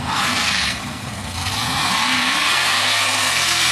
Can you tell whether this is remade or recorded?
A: remade